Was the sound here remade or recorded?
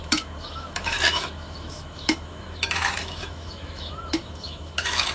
remade